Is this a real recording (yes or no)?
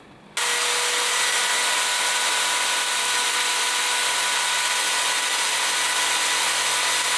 yes